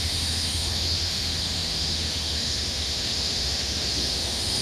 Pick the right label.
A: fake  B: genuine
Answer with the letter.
A